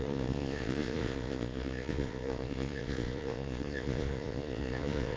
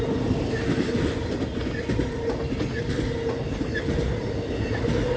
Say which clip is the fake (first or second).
first